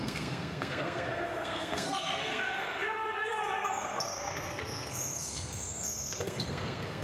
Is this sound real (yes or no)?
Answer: no